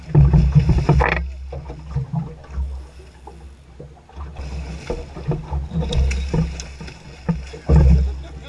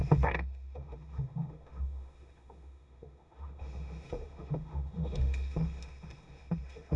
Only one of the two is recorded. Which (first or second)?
first